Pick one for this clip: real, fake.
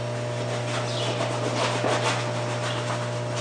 real